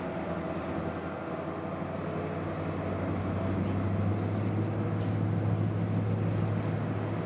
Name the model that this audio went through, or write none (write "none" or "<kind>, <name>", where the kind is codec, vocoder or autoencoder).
none